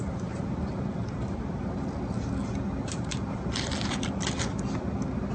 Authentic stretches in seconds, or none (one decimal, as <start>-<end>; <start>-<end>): 0.7-5.3